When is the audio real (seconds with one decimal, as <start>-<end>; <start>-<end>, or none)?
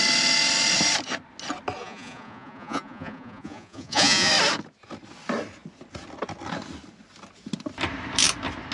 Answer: 0.0-1.8; 4.3-8.7